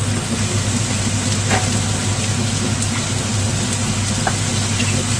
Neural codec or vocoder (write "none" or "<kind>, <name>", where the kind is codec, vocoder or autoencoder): none